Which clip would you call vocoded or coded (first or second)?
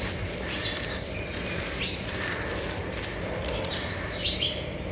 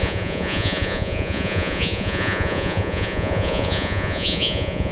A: second